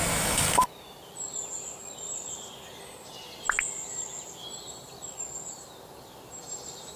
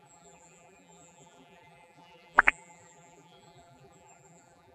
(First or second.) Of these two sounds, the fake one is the second